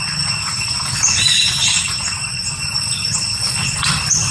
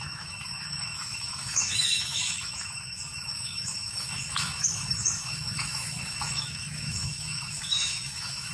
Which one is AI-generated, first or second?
second